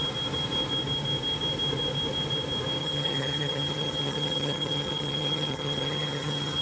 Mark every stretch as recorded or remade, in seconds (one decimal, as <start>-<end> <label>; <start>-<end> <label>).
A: 0.0-2.8 recorded; 2.8-6.6 remade